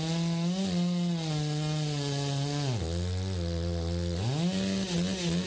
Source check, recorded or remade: recorded